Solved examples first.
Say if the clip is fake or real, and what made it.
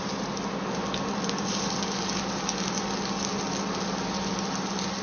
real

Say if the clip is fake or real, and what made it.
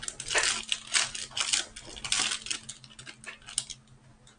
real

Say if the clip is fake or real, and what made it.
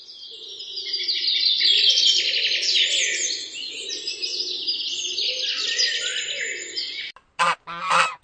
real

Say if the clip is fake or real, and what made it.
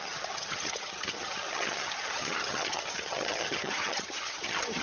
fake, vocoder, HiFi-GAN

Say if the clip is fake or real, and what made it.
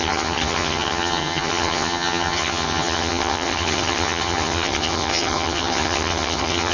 fake, vocoder, HiFi-GAN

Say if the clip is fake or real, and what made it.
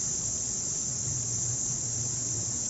fake, vocoder, BigVGAN v2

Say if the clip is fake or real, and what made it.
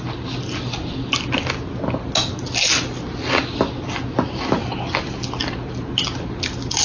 real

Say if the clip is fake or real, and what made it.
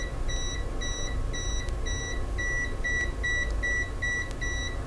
real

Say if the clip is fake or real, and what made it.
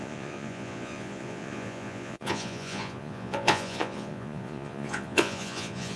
fake, vocoder, Vocos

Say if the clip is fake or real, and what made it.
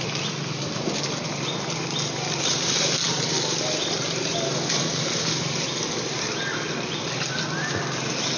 real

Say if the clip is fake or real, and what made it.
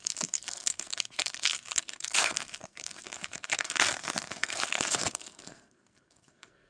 fake, codec, SNAC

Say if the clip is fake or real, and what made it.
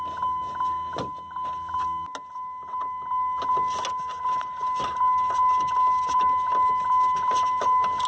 real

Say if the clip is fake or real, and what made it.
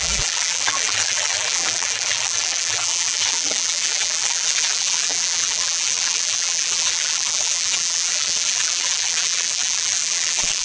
fake, vocoder, BigVGAN v2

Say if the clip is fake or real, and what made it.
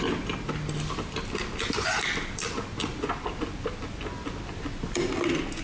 real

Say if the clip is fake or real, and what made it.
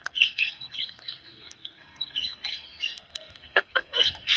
fake, codec, SNAC